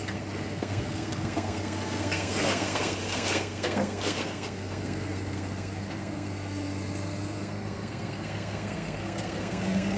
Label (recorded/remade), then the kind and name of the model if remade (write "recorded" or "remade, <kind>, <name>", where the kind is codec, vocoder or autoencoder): remade, codec, SNAC